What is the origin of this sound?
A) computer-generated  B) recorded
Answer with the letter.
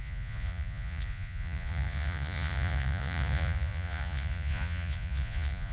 A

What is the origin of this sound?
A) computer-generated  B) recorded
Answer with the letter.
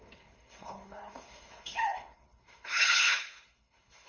A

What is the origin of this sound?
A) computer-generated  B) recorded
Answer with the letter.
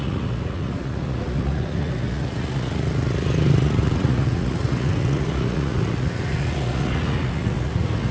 A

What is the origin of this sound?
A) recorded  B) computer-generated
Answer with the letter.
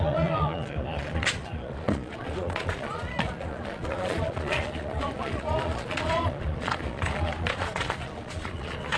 B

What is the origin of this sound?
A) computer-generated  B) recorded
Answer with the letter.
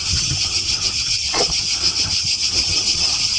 A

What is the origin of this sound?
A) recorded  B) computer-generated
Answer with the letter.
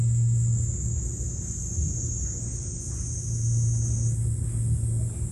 A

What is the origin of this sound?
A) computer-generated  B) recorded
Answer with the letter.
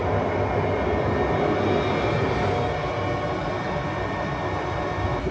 B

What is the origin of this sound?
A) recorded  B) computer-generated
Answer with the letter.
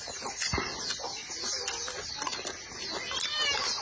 A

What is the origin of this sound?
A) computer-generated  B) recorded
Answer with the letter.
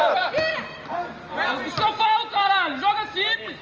B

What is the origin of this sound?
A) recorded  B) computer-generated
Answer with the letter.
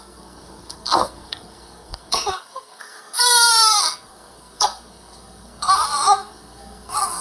B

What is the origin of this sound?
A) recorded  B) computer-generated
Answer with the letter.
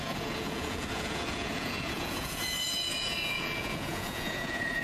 B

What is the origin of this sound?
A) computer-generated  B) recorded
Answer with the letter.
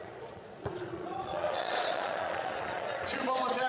A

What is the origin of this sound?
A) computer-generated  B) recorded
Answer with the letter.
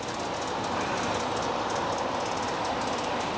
B